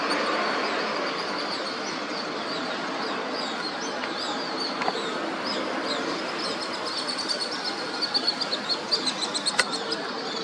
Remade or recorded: recorded